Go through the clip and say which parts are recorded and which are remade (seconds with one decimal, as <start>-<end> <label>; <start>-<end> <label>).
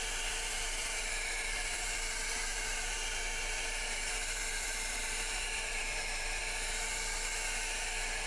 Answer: 0.0-6.4 remade; 6.4-8.3 recorded